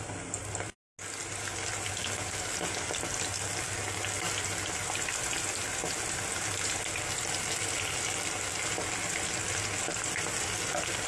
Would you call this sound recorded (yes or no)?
yes